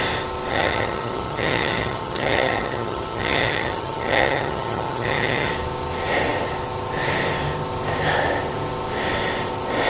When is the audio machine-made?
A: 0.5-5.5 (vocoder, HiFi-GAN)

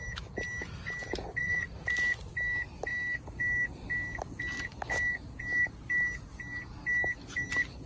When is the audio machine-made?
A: 1.4-1.9 (vocoder, Vocos)